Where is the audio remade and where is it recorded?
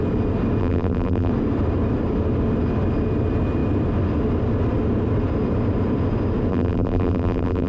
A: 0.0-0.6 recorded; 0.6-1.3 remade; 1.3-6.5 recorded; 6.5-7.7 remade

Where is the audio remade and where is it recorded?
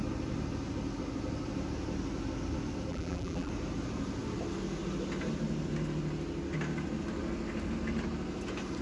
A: 0.0-2.9 recorded; 2.9-3.5 remade; 3.5-8.8 recorded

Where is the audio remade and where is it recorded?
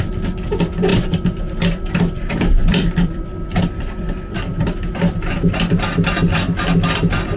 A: 0.0-0.9 recorded; 0.9-5.3 remade; 5.3-7.4 recorded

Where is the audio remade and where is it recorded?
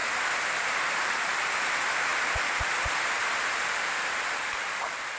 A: 0.0-1.5 remade; 1.5-5.2 recorded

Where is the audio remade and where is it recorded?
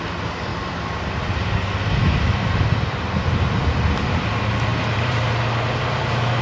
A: 0.0-0.5 recorded; 0.5-4.3 remade; 4.3-4.7 recorded; 4.7-5.4 remade; 5.4-6.4 recorded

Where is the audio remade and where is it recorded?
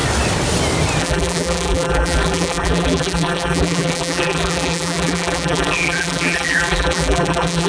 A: 0.0-1.0 recorded; 1.0-7.7 remade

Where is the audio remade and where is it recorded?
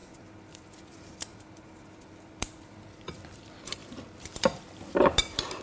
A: 0.0-3.8 remade; 3.8-5.6 recorded